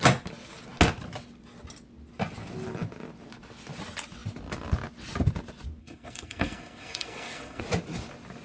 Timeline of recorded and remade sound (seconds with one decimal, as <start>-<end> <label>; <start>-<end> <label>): 0.0-5.8 recorded; 5.8-7.6 remade; 7.6-8.4 recorded